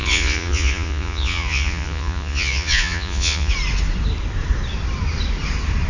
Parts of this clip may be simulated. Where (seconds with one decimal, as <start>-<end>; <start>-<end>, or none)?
0.0-3.5